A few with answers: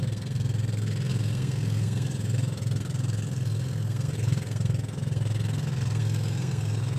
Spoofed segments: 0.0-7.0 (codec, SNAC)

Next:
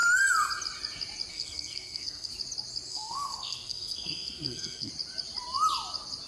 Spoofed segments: 1.3-2.3 (codec, SNAC); 2.9-4.9